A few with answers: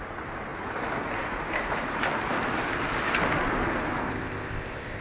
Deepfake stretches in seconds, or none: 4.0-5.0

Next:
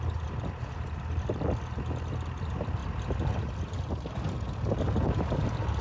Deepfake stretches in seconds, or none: none